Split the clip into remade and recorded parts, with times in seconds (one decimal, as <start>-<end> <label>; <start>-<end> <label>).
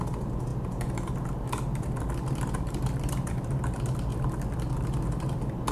0.0-0.5 recorded; 0.5-3.5 remade; 3.5-4.1 recorded; 4.1-4.6 remade; 4.6-5.7 recorded